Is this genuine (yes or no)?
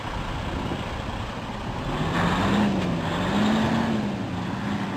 yes